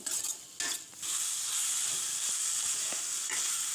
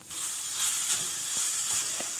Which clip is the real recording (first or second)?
first